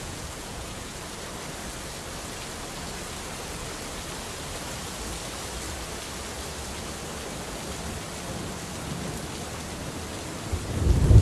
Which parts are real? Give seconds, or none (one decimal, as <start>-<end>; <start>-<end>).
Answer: 1.0-11.2